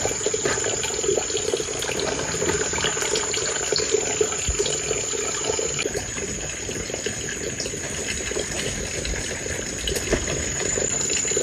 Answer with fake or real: real